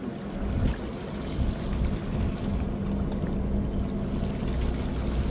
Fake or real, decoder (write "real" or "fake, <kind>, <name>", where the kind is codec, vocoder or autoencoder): real